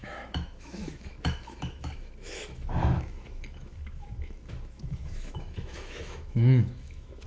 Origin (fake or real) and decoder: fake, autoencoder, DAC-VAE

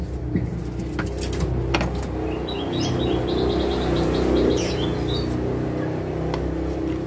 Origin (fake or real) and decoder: real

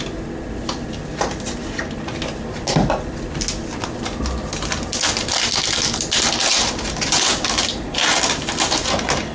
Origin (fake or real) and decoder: real